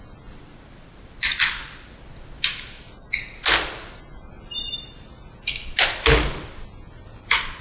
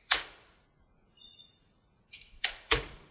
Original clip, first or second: first